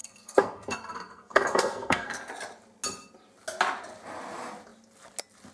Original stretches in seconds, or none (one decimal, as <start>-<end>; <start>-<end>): 2.3-5.5